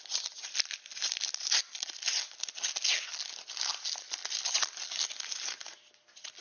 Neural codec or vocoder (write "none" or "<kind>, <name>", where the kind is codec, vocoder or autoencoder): none